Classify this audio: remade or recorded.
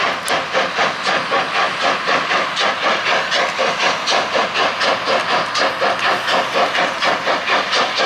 recorded